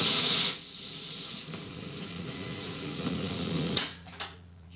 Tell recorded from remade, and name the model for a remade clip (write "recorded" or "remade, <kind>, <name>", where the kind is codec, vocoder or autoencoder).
remade, vocoder, Vocos